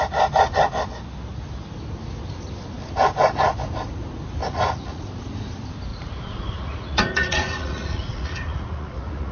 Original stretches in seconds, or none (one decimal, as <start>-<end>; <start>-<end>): 0.0-4.4; 5.1-5.9